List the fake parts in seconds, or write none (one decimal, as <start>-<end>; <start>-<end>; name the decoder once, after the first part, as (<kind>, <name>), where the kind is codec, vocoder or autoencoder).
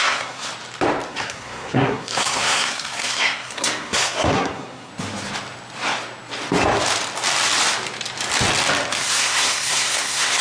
0.0-0.5 (codec, SNAC); 1.1-4.9; 9.1-10.4